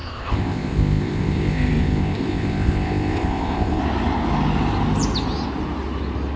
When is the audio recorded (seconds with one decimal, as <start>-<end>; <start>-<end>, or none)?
3.8-6.4